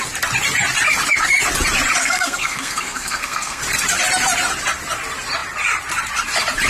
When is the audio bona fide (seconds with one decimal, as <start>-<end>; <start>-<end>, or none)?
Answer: 0.0-2.0; 3.6-6.7